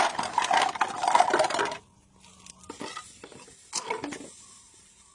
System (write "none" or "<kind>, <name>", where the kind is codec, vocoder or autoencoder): none